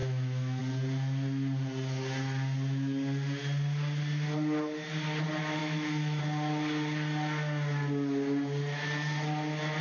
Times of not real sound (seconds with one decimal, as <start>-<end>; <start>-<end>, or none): 0.0-0.6; 5.6-6.2